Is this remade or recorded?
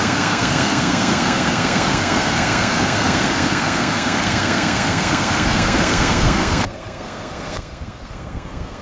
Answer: remade